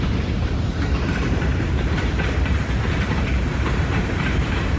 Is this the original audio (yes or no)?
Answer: no